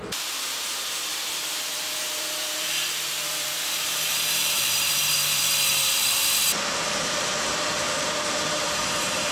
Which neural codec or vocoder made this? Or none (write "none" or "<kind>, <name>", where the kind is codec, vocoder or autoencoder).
vocoder, BigVGAN v2